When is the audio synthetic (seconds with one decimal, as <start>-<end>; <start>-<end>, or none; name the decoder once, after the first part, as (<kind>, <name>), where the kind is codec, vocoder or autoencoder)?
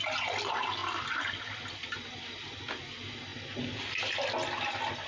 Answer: none